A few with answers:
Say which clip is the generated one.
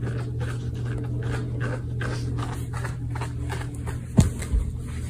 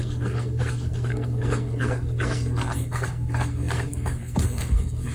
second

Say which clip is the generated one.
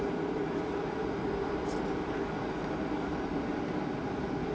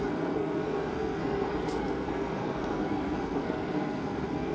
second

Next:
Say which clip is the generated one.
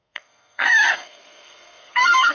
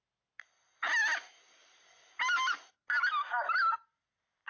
first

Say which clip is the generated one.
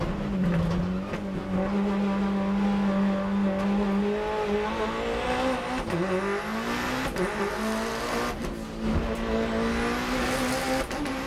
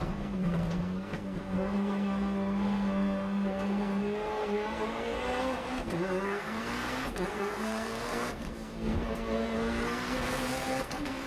second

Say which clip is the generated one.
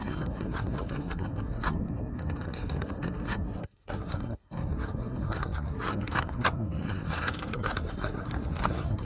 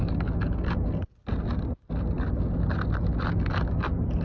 first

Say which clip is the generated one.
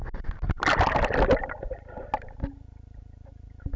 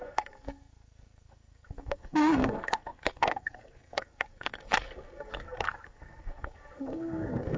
second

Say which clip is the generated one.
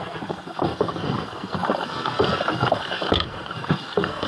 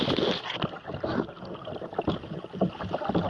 first